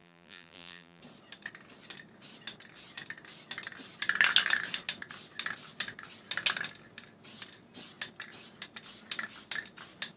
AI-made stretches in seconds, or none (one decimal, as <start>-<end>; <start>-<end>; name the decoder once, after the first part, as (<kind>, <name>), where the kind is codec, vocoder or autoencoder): 0.0-1.0 (vocoder, BigVGAN v2)